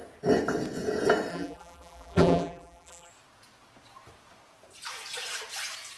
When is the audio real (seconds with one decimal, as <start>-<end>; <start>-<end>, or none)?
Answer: 0.0-1.3; 3.1-6.0